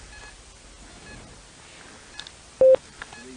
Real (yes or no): yes